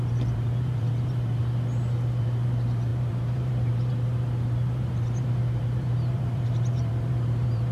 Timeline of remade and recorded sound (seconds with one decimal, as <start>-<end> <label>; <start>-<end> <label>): 0.0-1.4 remade; 1.4-2.2 recorded; 2.2-7.7 remade